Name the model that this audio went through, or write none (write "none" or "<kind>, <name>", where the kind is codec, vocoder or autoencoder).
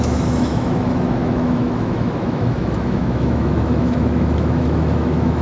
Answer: autoencoder, DAC-VAE